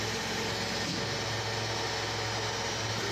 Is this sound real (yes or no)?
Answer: yes